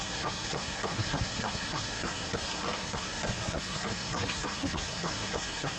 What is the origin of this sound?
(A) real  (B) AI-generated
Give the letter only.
B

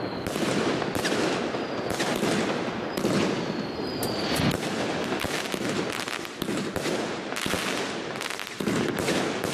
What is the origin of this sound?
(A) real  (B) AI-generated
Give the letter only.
A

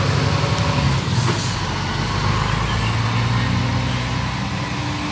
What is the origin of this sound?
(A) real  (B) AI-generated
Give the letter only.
A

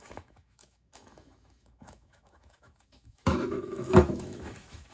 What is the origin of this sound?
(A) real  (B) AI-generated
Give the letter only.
B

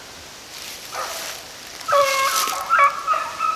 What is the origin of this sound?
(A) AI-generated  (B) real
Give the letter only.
B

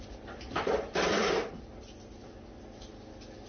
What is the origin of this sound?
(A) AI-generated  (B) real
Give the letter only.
B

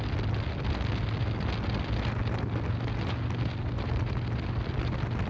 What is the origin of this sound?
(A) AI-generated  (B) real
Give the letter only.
B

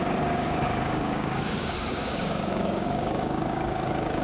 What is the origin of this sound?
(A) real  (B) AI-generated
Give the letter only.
B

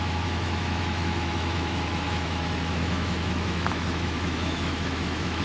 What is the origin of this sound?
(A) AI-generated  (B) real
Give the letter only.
A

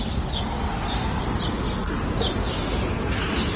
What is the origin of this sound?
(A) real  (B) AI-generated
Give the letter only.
A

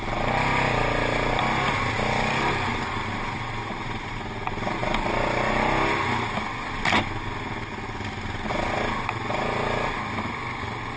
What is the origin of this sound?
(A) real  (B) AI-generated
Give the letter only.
A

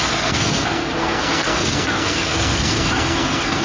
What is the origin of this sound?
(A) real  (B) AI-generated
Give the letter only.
B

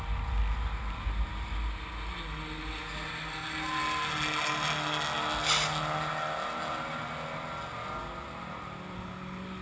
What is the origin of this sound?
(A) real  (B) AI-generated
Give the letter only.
A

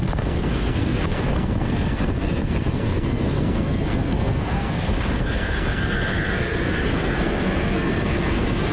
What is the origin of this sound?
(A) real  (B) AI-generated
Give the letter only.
B